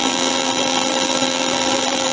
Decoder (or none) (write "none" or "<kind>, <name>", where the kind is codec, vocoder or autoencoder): vocoder, BigVGAN v2